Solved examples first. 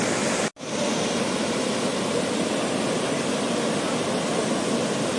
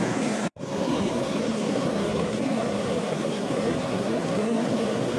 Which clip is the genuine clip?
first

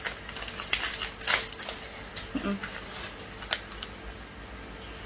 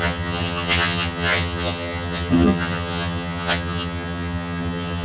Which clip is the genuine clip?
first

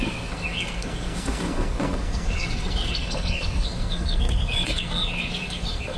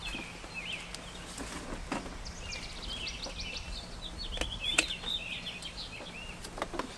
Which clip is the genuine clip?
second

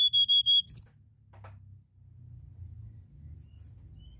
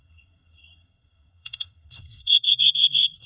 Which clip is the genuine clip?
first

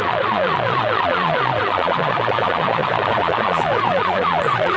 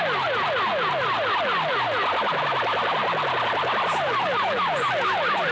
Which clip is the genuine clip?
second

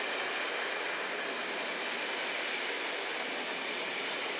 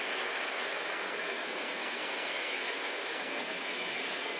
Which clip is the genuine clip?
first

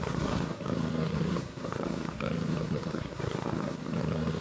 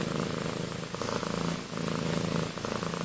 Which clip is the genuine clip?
second